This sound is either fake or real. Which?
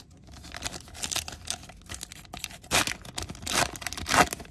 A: real